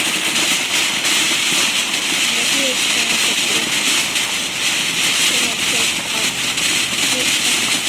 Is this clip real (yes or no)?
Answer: yes